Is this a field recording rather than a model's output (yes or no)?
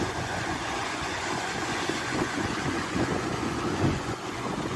no